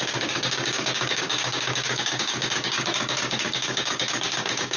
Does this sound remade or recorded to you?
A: remade